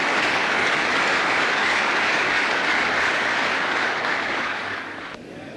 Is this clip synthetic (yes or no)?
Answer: yes